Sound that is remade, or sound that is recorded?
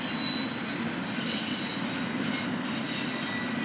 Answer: recorded